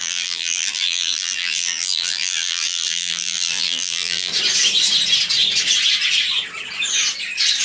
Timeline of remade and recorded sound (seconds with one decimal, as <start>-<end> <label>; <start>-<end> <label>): 0.0-4.3 remade; 4.3-7.6 recorded